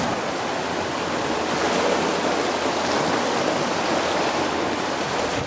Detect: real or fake real